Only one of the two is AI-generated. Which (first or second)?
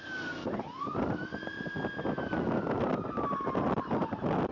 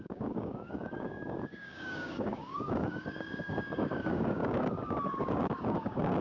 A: second